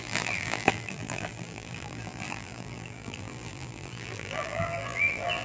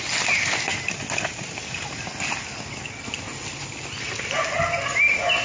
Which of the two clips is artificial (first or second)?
first